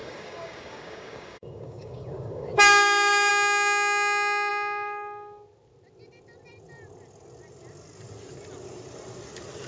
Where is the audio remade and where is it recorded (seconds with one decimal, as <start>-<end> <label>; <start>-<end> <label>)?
0.0-3.3 remade; 3.3-9.7 recorded